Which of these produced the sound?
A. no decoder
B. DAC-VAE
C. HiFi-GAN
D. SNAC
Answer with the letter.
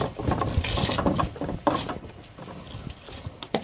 A